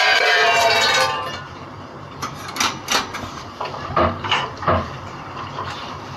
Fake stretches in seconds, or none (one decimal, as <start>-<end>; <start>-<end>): 0.6-2.5; 3.1-6.2